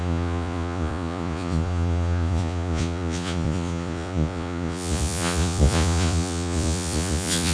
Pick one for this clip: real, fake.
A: fake